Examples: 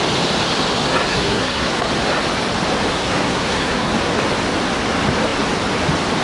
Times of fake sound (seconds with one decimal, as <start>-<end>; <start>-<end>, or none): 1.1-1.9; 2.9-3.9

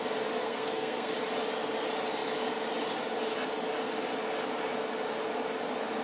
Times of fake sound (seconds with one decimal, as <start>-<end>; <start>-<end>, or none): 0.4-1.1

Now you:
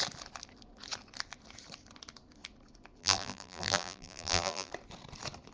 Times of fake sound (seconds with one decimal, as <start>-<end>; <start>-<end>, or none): 3.0-4.7

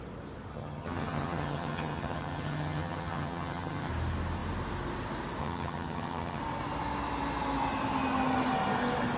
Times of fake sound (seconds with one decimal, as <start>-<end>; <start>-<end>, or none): 0.5-3.9; 5.4-6.4